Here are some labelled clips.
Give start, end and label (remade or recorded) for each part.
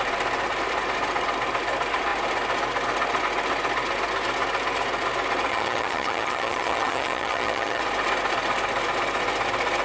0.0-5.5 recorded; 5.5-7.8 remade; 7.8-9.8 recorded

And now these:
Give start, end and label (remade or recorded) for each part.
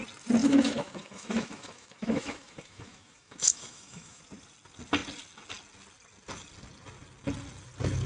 0.0-0.4 recorded; 0.4-4.2 remade; 4.2-8.1 recorded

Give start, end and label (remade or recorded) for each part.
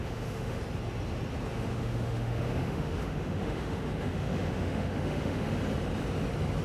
0.0-0.6 remade; 0.6-1.5 recorded; 1.5-5.5 remade; 5.5-6.6 recorded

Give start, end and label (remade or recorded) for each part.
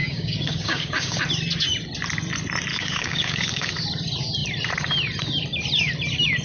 0.0-1.2 remade; 1.2-2.7 recorded; 2.7-3.7 remade; 3.7-6.4 recorded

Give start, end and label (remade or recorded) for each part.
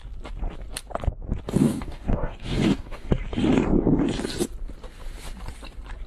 0.0-1.6 recorded; 1.6-3.1 remade; 3.1-6.1 recorded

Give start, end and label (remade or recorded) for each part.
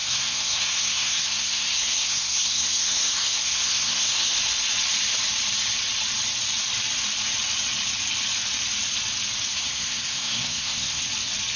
0.0-4.4 remade; 4.4-9.5 recorded; 9.5-11.0 remade; 11.0-11.6 recorded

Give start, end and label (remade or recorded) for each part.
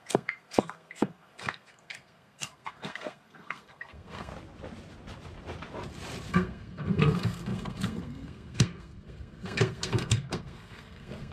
0.0-4.3 remade; 4.3-6.3 recorded; 6.3-11.3 remade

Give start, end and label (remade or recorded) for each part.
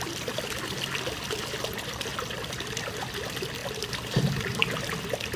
0.0-2.1 recorded; 2.1-3.2 remade; 3.2-5.4 recorded